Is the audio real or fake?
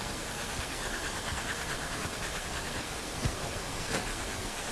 fake